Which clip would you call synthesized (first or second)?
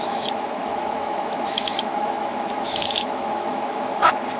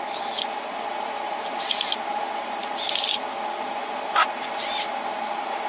first